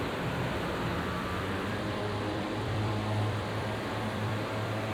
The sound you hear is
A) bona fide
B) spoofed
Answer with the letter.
B